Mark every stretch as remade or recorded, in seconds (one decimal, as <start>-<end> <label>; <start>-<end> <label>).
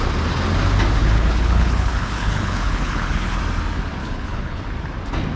0.0-1.0 recorded; 1.0-3.4 remade; 3.4-4.0 recorded; 4.0-4.6 remade; 4.6-5.4 recorded